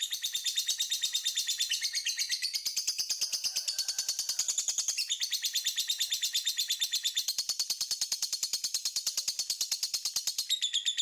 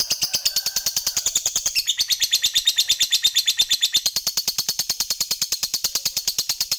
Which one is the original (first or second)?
first